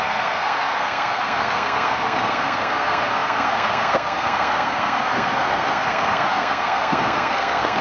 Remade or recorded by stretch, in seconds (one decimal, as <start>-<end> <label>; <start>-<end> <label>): 0.0-7.8 remade